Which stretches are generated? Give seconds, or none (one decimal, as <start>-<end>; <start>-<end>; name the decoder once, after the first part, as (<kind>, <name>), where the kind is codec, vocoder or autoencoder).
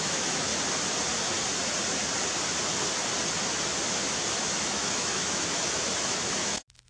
0.0-0.5 (autoencoder, DAC-VAE); 4.6-6.9